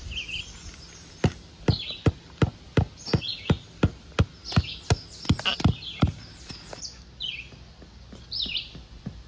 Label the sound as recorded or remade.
recorded